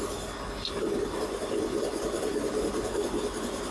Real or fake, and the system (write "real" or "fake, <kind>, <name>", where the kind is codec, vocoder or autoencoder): real